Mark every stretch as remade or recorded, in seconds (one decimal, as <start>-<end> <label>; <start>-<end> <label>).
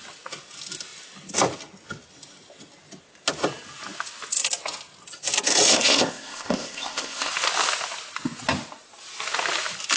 0.0-5.7 recorded; 5.7-7.3 remade; 7.3-10.0 recorded